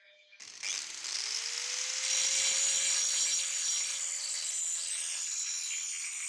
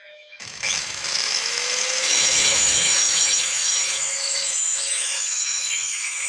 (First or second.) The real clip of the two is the first